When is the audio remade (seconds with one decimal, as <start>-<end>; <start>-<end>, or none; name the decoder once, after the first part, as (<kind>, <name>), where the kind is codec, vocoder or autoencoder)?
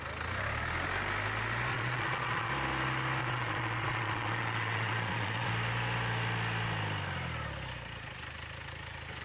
1.7-2.5 (vocoder, Vocos); 3.2-5.5